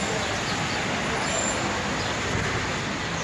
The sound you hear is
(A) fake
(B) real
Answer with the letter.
B